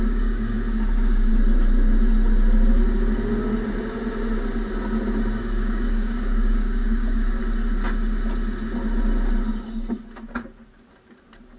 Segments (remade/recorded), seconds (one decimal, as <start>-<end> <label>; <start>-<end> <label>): 0.0-1.3 remade; 1.3-5.4 recorded; 5.4-7.4 remade; 7.4-11.6 recorded